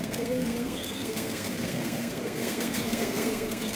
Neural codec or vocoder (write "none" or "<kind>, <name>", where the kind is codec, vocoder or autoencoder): codec, SNAC